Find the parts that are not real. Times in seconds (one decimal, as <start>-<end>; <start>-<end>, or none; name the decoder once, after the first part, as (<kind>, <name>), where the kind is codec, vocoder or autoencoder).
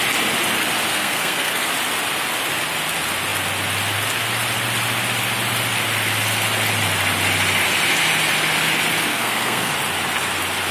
0.9-1.7 (codec, SNAC); 9.1-9.7